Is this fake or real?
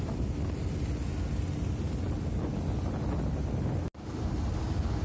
real